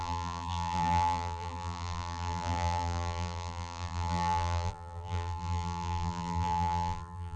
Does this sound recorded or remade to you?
remade